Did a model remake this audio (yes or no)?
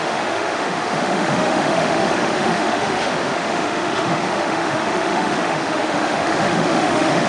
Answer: yes